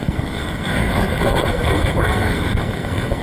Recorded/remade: remade